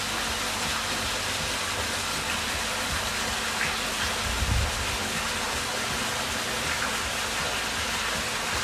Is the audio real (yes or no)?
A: yes